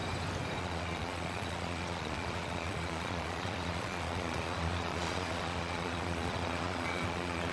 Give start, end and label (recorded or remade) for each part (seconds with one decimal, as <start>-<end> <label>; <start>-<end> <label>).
0.0-0.6 recorded; 0.6-7.5 remade